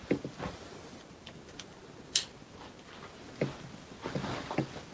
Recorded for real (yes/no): yes